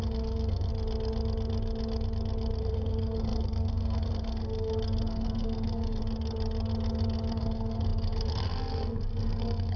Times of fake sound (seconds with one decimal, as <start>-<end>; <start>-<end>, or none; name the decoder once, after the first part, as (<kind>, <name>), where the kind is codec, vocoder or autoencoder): 0.0-0.7 (codec, SNAC); 2.6-6.0; 7.3-9.8